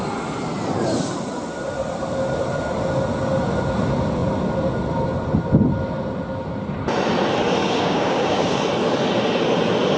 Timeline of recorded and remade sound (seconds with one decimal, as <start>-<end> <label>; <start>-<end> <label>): 0.0-7.6 recorded; 7.6-8.6 remade; 8.6-10.0 recorded